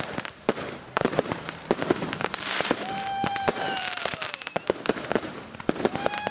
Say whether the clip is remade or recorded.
remade